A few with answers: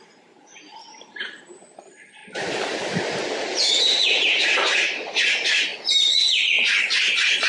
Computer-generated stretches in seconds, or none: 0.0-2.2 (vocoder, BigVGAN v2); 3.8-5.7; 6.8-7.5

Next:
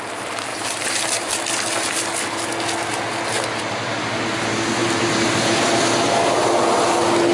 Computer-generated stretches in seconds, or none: 0.5-1.3 (vocoder, BigVGAN v2); 4.8-5.9

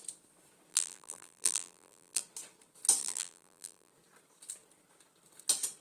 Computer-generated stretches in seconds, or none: 0.7-2.2 (vocoder, BigVGAN v2); 3.0-3.9

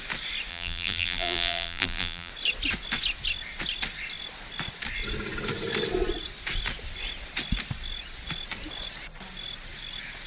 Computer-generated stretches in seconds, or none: 0.5-2.3 (vocoder, BigVGAN v2)

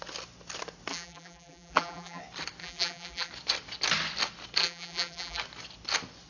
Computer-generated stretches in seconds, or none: 0.9-2.2 (vocoder, BigVGAN v2); 2.6-3.3; 4.6-5.4

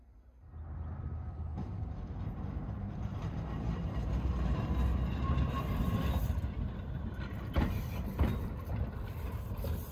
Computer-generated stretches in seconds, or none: 1.5-4.7 (vocoder, BigVGAN v2)

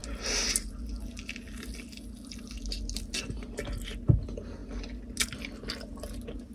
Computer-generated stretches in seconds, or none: none